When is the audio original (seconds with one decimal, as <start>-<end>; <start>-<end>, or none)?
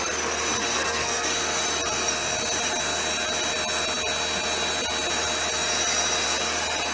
0.0-0.6; 1.6-6.9